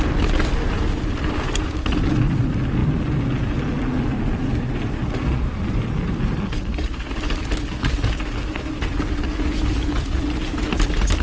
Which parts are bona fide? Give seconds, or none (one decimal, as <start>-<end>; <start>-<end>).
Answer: 0.0-11.2